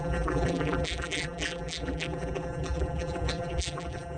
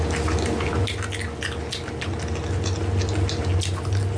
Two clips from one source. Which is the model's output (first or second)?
first